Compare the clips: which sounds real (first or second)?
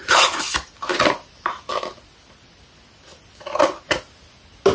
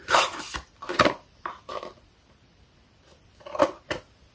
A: first